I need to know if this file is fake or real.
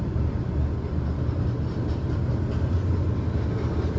real